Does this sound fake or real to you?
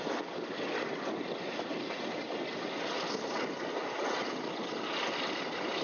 real